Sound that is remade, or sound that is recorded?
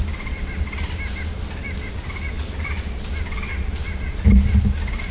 recorded